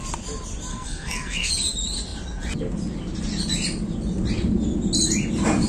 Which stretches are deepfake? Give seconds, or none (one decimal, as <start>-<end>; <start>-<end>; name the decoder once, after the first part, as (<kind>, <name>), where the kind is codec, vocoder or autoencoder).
0.7-1.5 (codec, SNAC)